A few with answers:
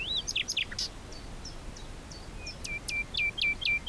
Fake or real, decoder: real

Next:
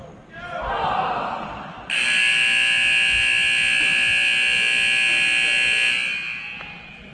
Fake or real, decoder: real